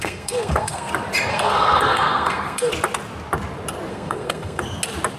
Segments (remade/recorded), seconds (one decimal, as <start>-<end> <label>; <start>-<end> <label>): 0.0-0.9 remade; 0.9-1.3 recorded; 1.3-2.7 remade; 2.7-3.9 recorded; 3.9-4.6 remade; 4.6-5.2 recorded